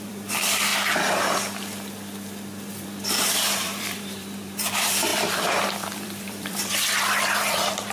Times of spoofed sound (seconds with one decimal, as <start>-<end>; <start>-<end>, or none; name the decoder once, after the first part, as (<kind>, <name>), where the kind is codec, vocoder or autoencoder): 0.0-0.7 (vocoder, BigVGAN v2); 2.7-7.9